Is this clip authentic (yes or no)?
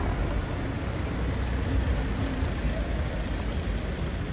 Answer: yes